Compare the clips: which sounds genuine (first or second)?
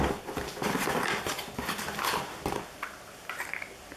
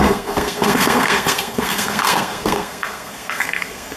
first